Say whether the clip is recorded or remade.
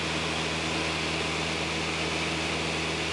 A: recorded